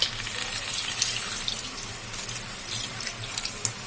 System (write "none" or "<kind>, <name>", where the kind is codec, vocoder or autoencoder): none